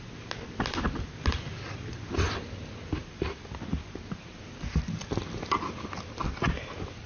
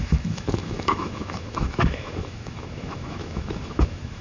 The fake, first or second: second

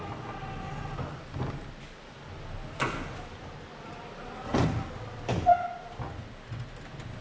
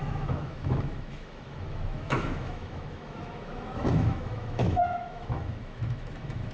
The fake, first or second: second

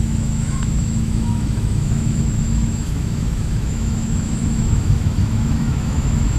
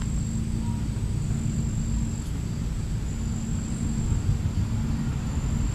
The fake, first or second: first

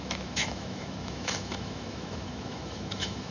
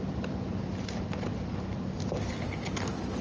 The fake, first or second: first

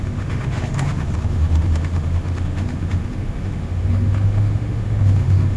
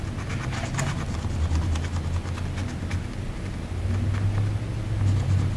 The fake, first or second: first